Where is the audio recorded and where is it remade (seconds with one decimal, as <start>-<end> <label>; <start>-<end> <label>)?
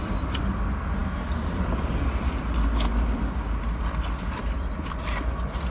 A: 0.0-5.7 recorded